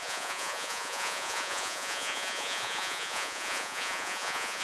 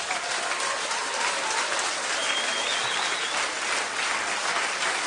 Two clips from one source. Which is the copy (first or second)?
first